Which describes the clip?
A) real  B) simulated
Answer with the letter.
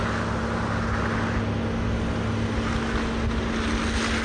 A